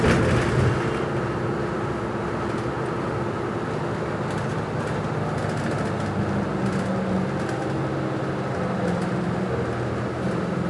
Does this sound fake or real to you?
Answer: real